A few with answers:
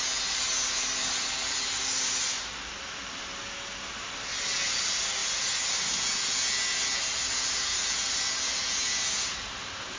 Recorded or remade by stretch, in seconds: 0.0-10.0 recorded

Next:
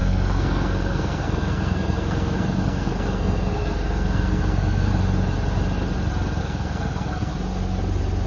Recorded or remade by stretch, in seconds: 0.0-4.9 remade; 4.9-6.4 recorded; 6.4-7.3 remade; 7.3-8.3 recorded

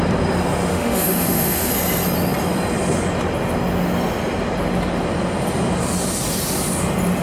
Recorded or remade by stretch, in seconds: 0.0-0.7 recorded; 0.7-1.7 remade; 1.7-7.2 recorded

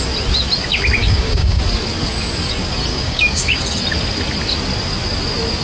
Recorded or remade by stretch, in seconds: 0.0-1.0 recorded; 1.0-1.6 remade; 1.6-2.9 recorded; 2.9-3.6 remade; 3.6-5.6 recorded

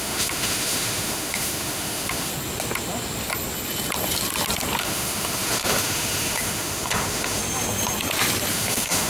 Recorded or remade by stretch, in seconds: 0.0-2.3 remade; 2.3-4.8 recorded; 4.8-7.4 remade; 7.4-8.5 recorded; 8.5-9.1 remade

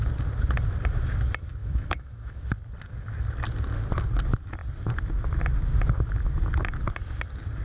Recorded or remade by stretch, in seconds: 0.0-1.6 recorded; 1.6-2.5 remade; 2.5-7.6 recorded